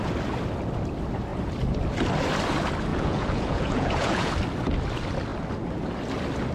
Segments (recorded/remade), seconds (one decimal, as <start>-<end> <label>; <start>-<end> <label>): 0.0-2.9 recorded; 2.9-4.3 remade; 4.3-6.5 recorded